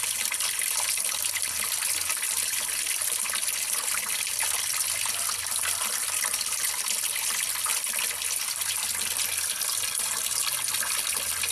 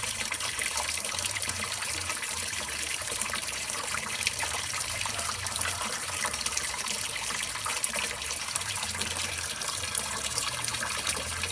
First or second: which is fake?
second